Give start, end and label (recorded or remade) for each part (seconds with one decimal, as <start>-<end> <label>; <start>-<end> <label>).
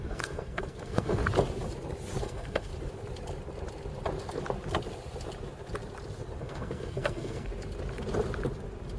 0.0-1.2 remade; 1.2-2.2 recorded; 2.2-2.7 remade; 2.7-6.4 recorded; 6.4-7.5 remade; 7.5-9.0 recorded